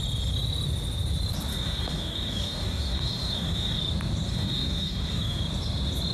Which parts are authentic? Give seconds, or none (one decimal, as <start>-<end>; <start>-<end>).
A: 0.0-1.5; 3.8-4.3; 5.4-6.1